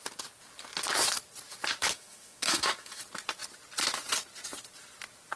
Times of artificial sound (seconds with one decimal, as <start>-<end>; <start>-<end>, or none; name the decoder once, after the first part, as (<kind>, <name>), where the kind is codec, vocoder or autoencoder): 1.8-3.0 (autoencoder, DAC-VAE)